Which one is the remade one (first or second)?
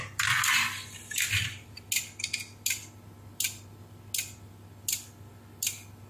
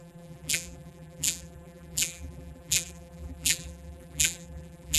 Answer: second